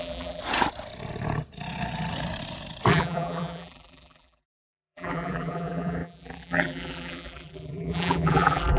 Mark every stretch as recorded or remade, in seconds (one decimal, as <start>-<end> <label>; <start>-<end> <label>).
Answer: 0.0-0.4 remade; 0.4-2.9 recorded; 2.9-8.8 remade